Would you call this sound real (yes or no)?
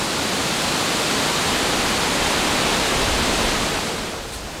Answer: yes